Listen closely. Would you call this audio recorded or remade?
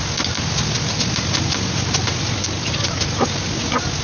recorded